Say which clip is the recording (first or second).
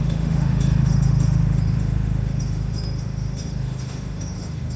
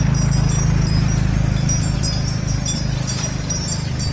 second